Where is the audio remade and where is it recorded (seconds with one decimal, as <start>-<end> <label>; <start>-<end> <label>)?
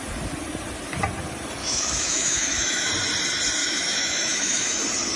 0.0-1.6 recorded; 1.6-2.9 remade; 2.9-3.6 recorded; 3.6-4.8 remade; 4.8-5.2 recorded